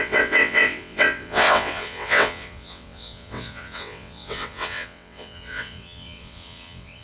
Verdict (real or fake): fake